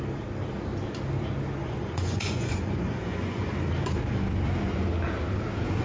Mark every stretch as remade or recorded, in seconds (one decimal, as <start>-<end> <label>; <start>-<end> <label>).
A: 0.0-1.6 recorded; 1.6-3.5 remade; 3.5-5.8 recorded